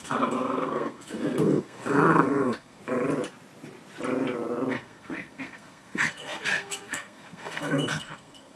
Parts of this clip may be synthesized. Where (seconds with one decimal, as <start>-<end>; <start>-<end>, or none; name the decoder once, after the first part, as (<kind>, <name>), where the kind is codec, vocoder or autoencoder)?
0.0-2.8 (codec, SNAC); 4.7-8.6